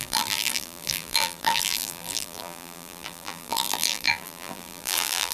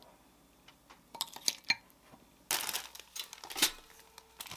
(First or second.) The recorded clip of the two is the second